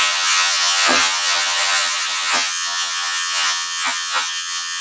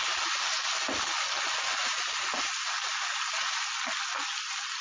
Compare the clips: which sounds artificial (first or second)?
first